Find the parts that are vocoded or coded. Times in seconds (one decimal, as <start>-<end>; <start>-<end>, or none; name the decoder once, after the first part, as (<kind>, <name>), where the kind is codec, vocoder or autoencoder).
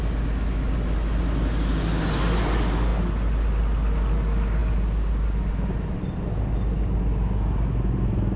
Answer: none